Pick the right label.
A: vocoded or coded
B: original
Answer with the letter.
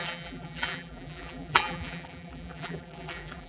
A